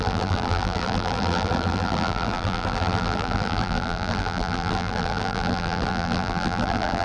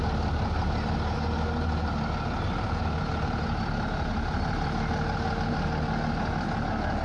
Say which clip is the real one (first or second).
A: second